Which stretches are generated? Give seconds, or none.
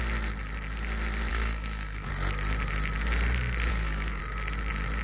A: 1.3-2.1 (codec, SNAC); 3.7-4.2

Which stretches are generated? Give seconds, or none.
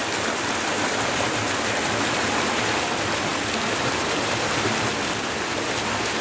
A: none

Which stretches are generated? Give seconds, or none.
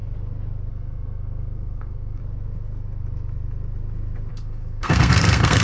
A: 0.7-2.2 (codec, SNAC); 4.3-5.6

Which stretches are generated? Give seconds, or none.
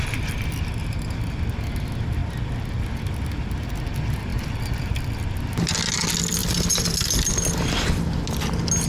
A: none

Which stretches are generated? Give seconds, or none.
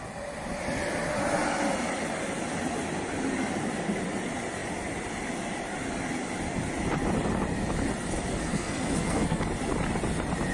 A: 8.3-9.4 (codec, SNAC)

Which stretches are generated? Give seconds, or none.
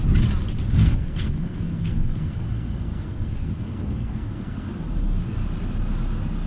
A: 0.8-4.7 (codec, SNAC)